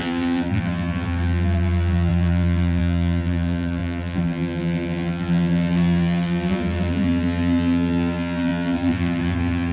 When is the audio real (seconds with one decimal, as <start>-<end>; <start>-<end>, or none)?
none

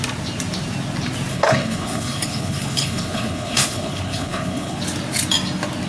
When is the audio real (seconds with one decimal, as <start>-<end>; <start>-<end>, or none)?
0.0-1.3; 4.8-5.9

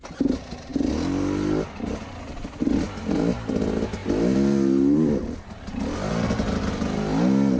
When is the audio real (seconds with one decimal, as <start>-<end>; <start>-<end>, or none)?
0.0-7.6

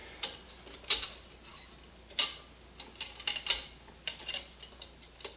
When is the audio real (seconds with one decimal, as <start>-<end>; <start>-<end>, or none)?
0.0-5.4